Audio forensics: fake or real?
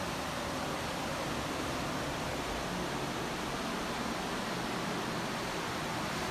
real